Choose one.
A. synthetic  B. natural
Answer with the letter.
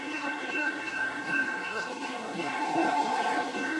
A